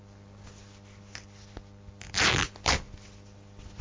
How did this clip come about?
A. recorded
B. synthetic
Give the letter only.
A